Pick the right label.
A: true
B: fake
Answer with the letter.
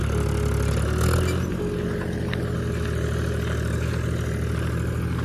A